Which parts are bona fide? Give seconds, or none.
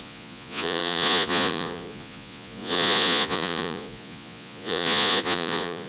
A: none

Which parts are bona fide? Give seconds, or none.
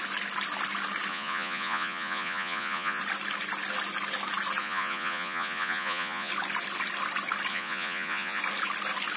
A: 0.0-1.1; 3.0-4.6; 6.3-7.5; 8.4-9.2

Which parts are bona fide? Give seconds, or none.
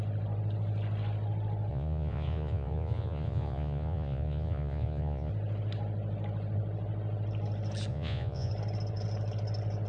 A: 0.0-1.7; 5.3-7.9; 8.5-9.9